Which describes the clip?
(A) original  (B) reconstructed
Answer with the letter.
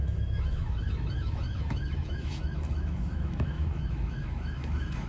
B